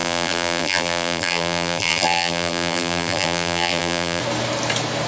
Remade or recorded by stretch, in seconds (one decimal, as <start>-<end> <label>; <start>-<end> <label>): 0.0-4.2 remade; 4.2-5.1 recorded